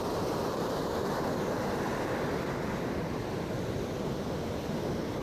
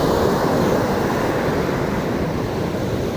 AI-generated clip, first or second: second